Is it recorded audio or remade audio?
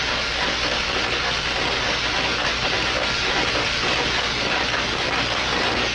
recorded